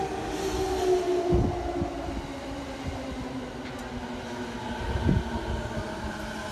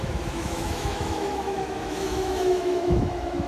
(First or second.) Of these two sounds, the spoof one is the second